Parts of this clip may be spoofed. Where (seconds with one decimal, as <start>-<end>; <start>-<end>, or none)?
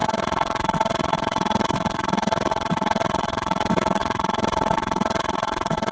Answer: 0.0-5.9